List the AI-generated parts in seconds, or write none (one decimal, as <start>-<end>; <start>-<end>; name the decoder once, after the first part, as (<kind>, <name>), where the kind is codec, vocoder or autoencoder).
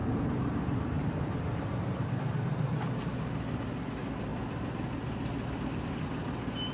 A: 0.0-3.0 (vocoder, BigVGAN v2)